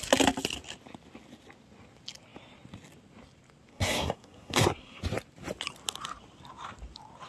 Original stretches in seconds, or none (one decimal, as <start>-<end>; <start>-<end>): 0.0-3.7; 5.0-7.3